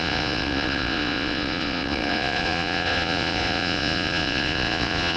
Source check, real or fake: fake